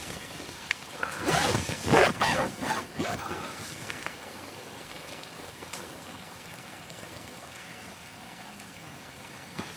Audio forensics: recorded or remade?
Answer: remade